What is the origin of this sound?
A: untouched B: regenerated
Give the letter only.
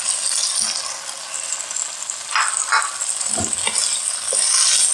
A